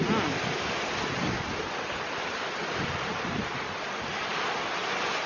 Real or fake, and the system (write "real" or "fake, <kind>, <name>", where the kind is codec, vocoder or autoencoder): real